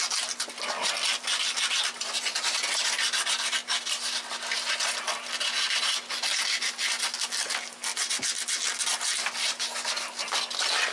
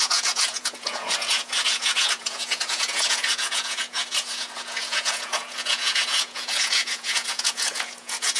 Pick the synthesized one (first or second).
second